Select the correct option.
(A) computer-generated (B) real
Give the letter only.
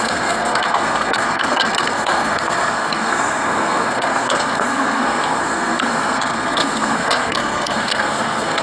A